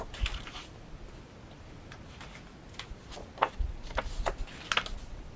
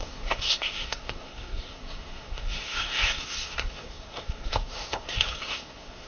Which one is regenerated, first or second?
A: second